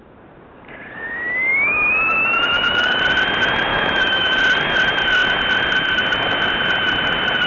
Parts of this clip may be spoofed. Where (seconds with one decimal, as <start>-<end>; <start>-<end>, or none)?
1.5-3.0; 3.7-4.4